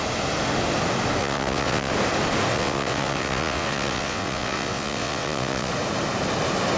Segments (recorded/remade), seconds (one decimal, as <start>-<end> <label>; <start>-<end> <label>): 0.0-1.2 recorded; 1.2-1.9 remade; 1.9-2.5 recorded; 2.5-5.7 remade; 5.7-6.8 recorded